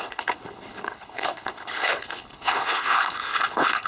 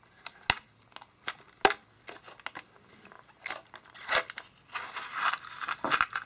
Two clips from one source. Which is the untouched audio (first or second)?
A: second